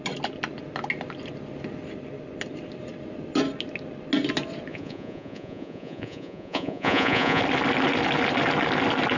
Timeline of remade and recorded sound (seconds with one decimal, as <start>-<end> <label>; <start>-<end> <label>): 0.0-4.7 recorded; 4.7-7.4 remade; 7.4-9.2 recorded